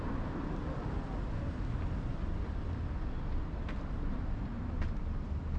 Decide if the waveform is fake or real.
real